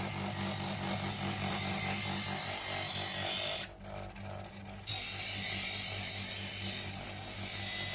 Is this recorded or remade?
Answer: recorded